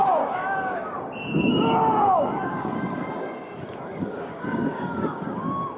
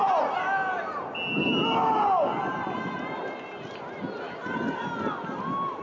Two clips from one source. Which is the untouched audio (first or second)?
second